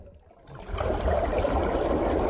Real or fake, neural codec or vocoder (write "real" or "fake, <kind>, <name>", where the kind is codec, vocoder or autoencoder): real